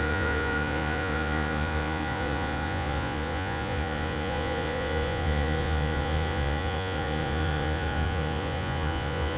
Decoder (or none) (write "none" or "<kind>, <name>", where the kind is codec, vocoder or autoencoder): vocoder, Vocos